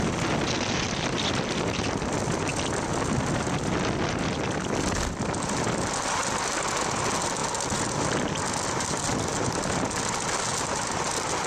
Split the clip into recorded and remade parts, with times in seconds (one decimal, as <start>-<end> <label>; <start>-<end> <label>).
0.0-11.5 recorded